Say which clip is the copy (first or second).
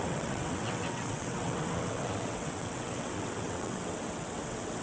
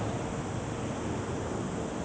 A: first